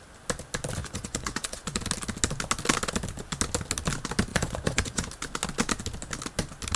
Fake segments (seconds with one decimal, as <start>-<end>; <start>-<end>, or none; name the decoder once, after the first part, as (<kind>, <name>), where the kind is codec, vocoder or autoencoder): 0.8-1.8 (vocoder, Vocos); 4.3-5.1